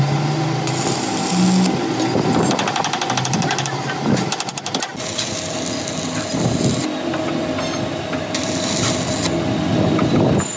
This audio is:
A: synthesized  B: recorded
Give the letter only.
B